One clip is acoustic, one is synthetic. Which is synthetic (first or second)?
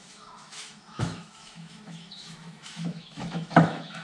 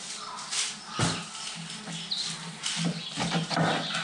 first